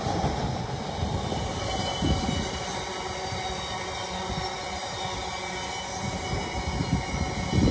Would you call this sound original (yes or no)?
yes